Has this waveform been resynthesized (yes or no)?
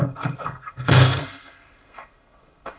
yes